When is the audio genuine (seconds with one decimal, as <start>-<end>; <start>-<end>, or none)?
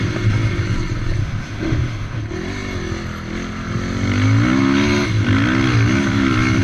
0.0-1.2; 2.2-6.6